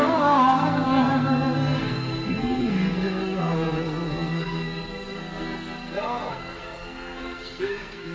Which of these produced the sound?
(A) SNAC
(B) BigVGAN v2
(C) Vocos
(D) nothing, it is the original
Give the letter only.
A